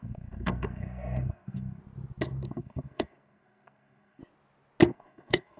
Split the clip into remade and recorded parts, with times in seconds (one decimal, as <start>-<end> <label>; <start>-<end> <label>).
0.0-1.8 remade; 1.8-2.5 recorded; 2.5-4.2 remade; 4.2-4.9 recorded; 4.9-5.6 remade